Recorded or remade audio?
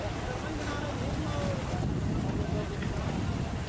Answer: recorded